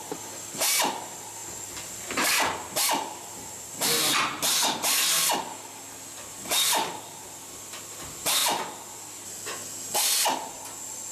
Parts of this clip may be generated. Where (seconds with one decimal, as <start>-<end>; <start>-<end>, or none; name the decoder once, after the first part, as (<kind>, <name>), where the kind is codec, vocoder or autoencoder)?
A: none